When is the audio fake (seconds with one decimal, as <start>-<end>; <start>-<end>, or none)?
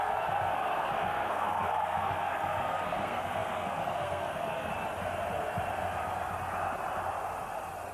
0.0-4.7